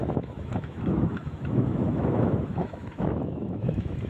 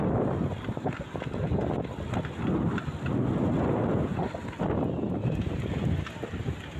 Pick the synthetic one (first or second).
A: first